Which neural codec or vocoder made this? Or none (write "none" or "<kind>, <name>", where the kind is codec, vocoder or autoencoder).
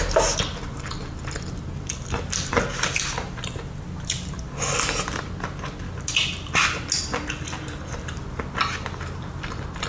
none